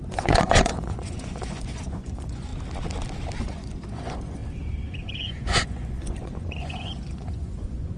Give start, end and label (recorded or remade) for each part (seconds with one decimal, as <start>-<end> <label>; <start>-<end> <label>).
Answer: 0.0-2.5 remade; 2.5-3.4 recorded; 3.4-4.4 remade; 4.4-5.0 recorded; 5.0-8.0 remade